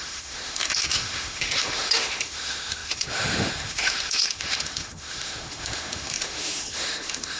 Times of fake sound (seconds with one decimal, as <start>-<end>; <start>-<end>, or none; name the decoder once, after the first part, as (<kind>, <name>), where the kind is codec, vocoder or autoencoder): 0.0-7.4 (autoencoder, DAC-VAE)